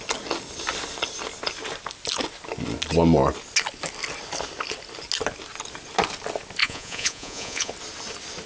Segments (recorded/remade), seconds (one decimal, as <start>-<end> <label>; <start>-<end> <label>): 0.0-6.6 recorded; 6.6-7.7 remade; 7.7-8.5 recorded